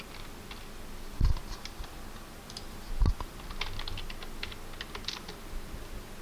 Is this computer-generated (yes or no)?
no